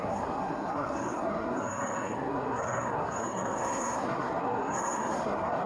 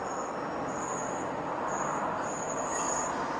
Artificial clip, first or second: first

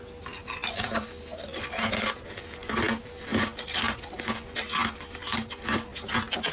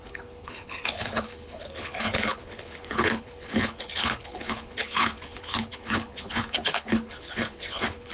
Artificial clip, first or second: second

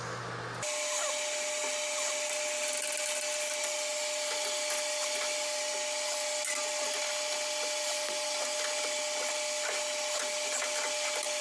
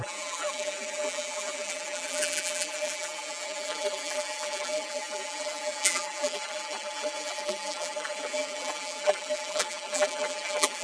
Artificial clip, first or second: second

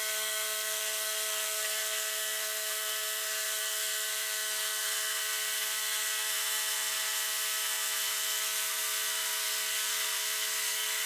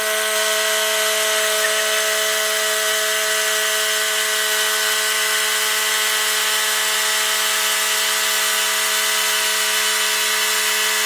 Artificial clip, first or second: first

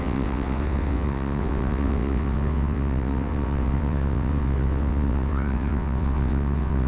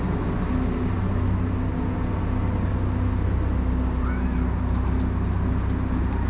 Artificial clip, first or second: first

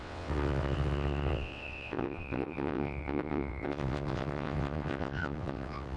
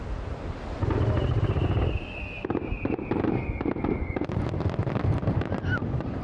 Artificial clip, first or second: first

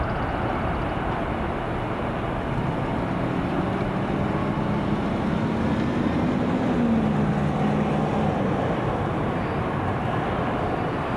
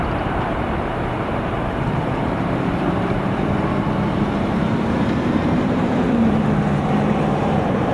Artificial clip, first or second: second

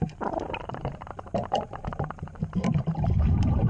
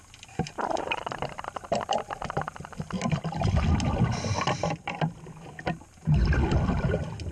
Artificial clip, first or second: first